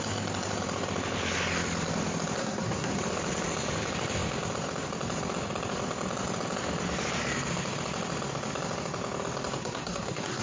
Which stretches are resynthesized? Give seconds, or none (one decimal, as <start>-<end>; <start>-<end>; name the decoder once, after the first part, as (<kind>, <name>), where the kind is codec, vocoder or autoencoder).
2.4-3.0 (codec, SNAC); 9.6-10.4